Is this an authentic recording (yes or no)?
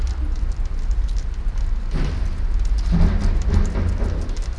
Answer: yes